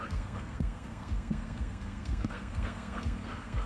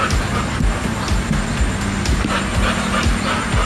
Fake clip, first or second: first